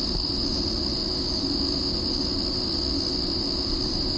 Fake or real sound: real